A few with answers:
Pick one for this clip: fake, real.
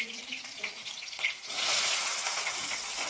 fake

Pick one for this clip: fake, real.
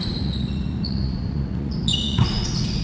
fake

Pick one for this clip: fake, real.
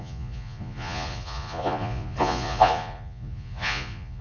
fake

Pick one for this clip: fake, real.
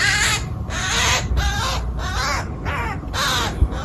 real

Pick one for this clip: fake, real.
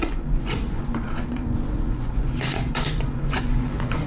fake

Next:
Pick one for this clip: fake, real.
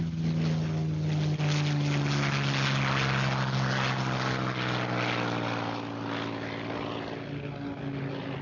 real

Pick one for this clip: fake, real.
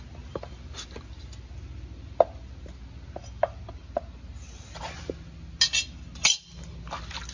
real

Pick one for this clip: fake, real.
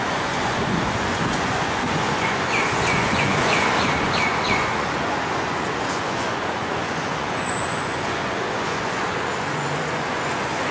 fake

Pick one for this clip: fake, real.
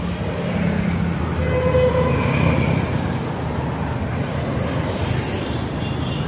real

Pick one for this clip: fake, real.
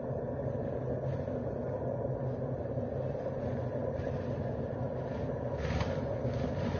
real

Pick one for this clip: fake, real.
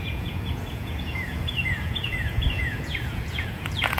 fake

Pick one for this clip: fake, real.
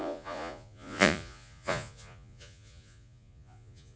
fake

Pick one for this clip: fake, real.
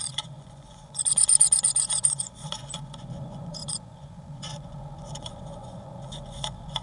fake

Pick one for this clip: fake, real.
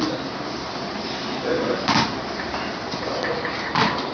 real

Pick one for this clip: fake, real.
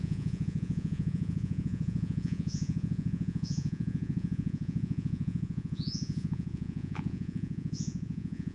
fake